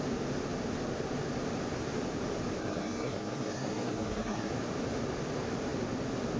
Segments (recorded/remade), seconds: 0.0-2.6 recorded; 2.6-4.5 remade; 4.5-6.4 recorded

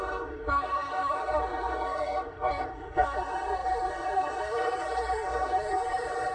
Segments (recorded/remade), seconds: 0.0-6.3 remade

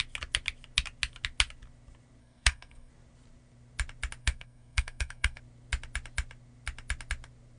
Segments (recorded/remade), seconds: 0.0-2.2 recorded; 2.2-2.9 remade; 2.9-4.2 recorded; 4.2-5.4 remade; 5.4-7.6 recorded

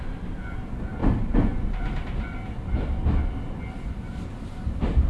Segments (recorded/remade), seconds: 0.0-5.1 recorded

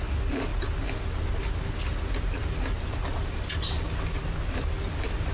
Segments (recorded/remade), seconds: 0.0-5.3 recorded

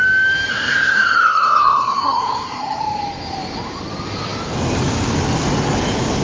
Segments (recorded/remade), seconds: 0.0-0.5 recorded; 0.5-2.8 remade; 2.8-6.2 recorded